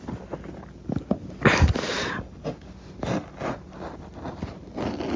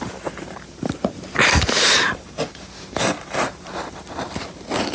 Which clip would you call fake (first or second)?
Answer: second